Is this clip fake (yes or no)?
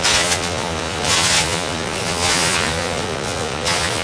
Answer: yes